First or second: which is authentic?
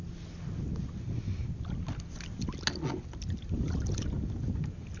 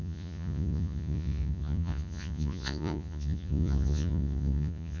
first